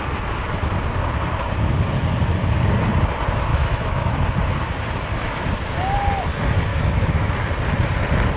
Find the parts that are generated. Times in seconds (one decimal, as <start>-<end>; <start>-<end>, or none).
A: 3.5-4.1; 6.7-7.3